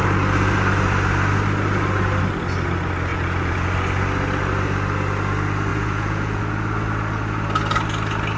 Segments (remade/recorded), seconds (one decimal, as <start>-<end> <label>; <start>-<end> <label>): 0.0-3.1 recorded; 3.1-3.7 remade; 3.7-5.7 recorded; 5.7-6.4 remade; 6.4-8.4 recorded